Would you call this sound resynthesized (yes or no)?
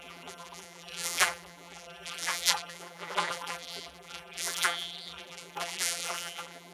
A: yes